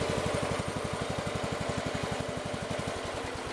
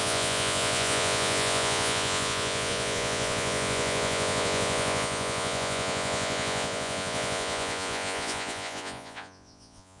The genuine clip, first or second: first